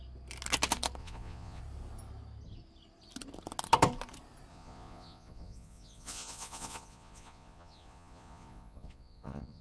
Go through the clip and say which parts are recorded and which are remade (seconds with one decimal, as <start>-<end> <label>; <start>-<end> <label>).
0.0-1.0 recorded; 1.0-1.6 remade; 1.6-4.5 recorded; 4.5-9.6 remade